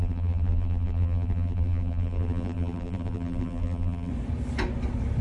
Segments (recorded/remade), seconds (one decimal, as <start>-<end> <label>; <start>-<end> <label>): 0.0-4.1 remade; 4.1-5.2 recorded